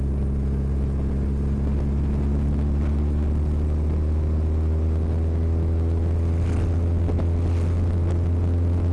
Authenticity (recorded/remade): recorded